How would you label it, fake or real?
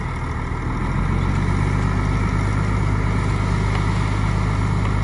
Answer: real